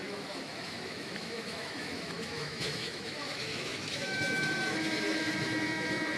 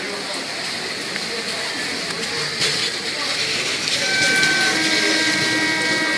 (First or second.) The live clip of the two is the second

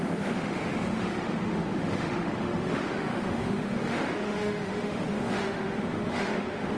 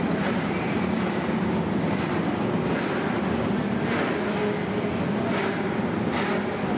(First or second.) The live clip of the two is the second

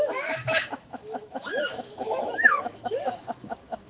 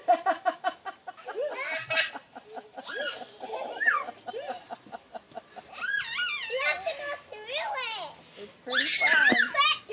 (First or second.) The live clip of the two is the second